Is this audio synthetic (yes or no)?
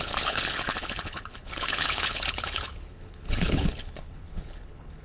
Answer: yes